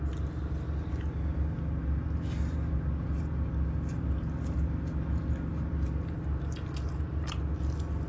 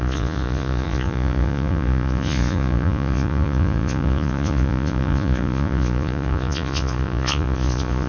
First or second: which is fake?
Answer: second